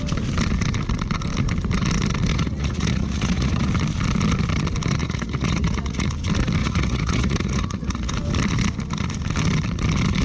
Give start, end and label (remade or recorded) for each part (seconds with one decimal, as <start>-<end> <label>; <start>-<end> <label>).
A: 0.0-2.3 recorded; 2.3-3.7 remade; 3.7-5.0 recorded; 5.0-6.1 remade; 6.1-6.6 recorded; 6.6-8.1 remade; 8.1-10.2 recorded